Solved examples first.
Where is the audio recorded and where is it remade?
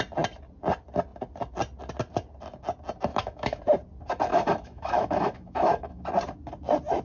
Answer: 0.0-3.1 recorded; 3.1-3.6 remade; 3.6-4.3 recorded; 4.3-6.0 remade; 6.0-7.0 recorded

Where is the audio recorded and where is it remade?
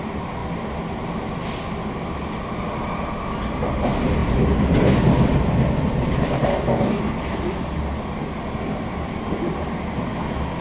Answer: 0.0-6.5 recorded; 6.5-7.0 remade; 7.0-10.6 recorded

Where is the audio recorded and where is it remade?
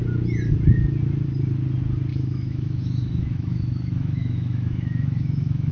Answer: 0.0-2.1 recorded; 2.1-5.7 remade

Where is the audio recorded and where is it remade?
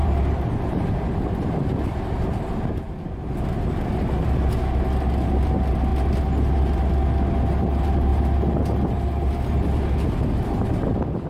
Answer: 0.0-2.9 remade; 2.9-11.3 recorded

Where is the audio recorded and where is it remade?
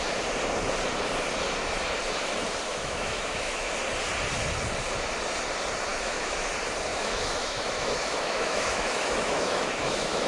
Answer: 0.0-2.7 recorded; 2.7-3.7 remade; 3.7-5.9 recorded; 5.9-6.5 remade; 6.5-6.9 recorded; 6.9-10.3 remade